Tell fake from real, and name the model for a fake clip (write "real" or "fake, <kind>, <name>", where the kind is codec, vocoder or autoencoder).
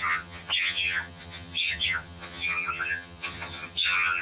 fake, vocoder, HiFi-GAN